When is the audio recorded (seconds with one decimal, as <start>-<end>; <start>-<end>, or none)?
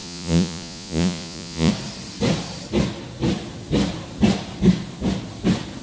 1.7-5.8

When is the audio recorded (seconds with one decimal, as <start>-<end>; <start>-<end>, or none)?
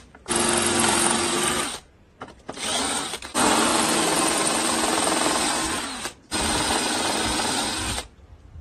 0.0-2.7; 3.3-8.6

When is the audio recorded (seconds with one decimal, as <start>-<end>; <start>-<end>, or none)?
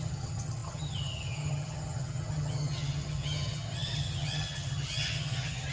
none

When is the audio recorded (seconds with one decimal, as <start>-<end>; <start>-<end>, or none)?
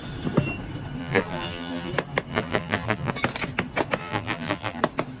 0.0-1.0; 1.9-2.3; 3.1-4.0; 4.8-5.2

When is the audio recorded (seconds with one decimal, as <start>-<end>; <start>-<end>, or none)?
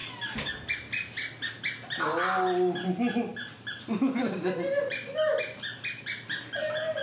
0.0-7.0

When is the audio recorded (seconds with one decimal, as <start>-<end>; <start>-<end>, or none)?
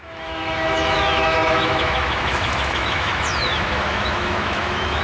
none